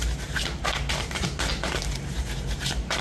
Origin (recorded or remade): recorded